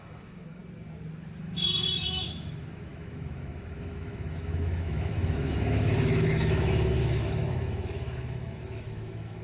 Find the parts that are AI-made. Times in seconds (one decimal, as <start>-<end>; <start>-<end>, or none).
0.0-0.6; 1.4-9.4